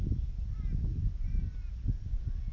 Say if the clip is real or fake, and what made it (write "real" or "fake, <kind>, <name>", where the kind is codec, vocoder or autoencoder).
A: real